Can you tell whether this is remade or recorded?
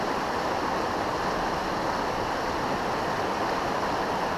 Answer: recorded